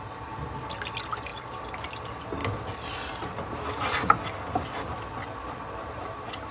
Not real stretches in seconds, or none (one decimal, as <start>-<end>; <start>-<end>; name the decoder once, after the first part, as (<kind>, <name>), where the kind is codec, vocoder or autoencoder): 1.3-1.9 (vocoder, BigVGAN v2)